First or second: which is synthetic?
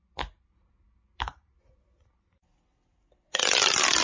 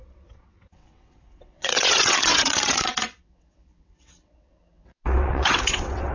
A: second